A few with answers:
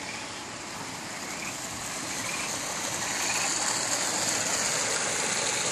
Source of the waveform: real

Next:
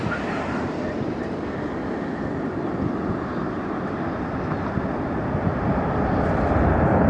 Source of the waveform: real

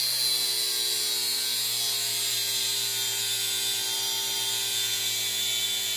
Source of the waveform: real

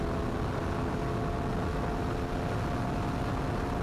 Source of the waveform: real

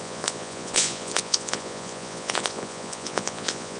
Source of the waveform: fake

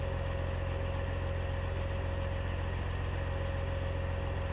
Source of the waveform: real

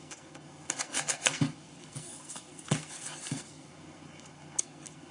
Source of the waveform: fake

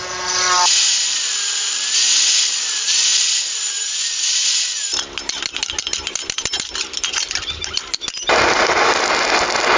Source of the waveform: real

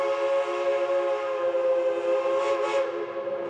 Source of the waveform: real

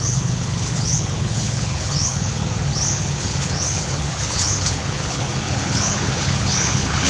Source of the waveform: fake